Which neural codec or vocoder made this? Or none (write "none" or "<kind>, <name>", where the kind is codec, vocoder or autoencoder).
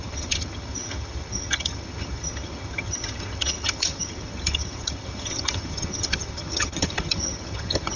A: vocoder, HiFi-GAN